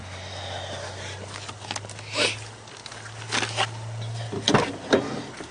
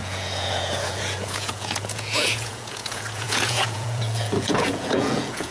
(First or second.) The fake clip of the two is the second